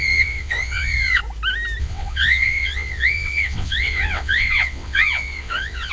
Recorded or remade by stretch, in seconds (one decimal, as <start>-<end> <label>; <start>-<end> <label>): 0.0-1.2 remade; 1.2-1.8 recorded; 1.8-5.9 remade